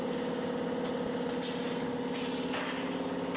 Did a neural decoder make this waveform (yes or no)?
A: no